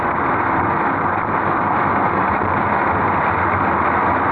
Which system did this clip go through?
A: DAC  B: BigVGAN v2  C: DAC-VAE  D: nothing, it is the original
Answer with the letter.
D